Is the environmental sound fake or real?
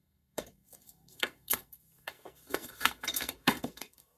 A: fake